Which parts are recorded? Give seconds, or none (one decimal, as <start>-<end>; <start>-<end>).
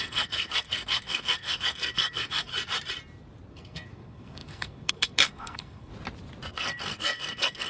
2.5-3.5; 5.9-6.5